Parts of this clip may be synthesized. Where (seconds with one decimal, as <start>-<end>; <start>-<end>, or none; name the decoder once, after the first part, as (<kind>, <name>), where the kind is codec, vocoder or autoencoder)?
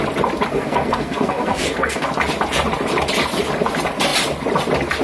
0.5-2.1 (codec, SNAC)